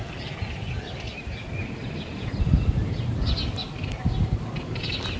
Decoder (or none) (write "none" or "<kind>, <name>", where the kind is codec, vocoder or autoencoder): none